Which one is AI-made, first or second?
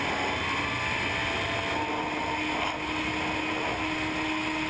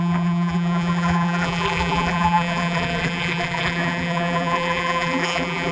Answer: second